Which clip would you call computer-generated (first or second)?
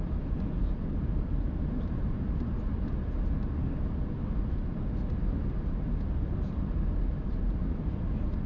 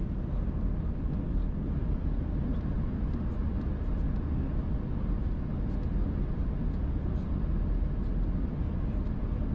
first